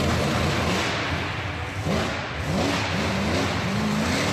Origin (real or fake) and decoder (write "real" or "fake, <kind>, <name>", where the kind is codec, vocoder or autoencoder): real